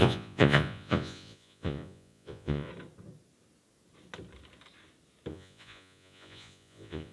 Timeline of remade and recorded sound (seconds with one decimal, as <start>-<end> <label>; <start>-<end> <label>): 0.0-2.7 remade; 2.7-5.3 recorded; 5.3-7.1 remade